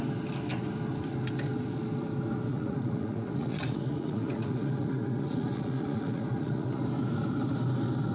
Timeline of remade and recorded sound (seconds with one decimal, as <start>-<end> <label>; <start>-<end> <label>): 0.0-2.5 recorded; 2.5-6.8 remade; 6.8-8.1 recorded